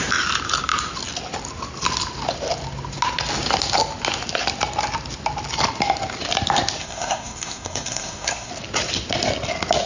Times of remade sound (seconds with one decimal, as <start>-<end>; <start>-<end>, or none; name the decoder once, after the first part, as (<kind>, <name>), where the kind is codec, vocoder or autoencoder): 6.8-8.5 (codec, SNAC)